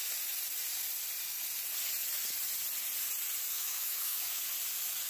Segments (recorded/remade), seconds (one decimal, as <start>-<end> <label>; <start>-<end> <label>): 0.0-3.5 recorded; 3.5-4.4 remade; 4.4-5.1 recorded